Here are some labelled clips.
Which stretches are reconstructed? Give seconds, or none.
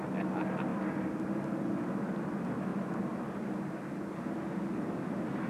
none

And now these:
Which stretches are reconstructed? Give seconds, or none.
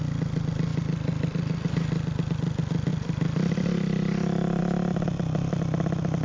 none